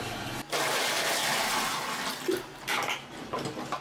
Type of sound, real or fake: real